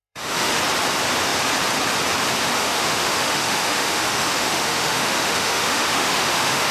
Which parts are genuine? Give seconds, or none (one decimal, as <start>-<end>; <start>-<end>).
0.6-2.6

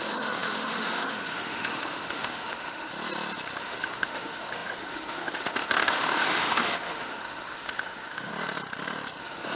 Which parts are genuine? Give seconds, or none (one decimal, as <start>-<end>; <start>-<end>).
2.9-3.6; 8.3-9.2

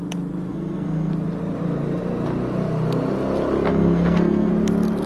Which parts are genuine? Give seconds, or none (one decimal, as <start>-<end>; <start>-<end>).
0.0-0.5; 1.1-3.7; 4.5-5.1

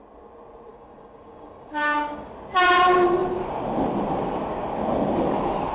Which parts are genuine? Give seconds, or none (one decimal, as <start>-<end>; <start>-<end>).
0.0-0.7; 2.3-5.7

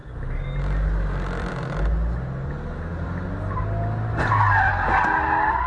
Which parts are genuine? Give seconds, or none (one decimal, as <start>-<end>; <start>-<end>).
0.0-5.7

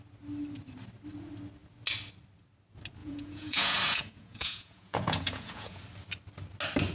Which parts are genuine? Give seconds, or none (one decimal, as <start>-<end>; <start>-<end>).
0.0-3.0; 5.8-6.9

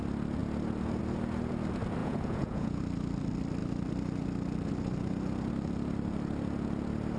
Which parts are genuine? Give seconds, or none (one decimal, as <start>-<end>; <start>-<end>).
0.0-2.0; 2.8-7.2

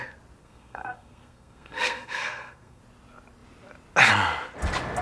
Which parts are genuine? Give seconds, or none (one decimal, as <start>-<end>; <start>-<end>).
0.0-0.4; 2.8-5.0